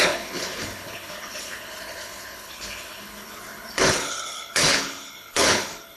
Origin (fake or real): fake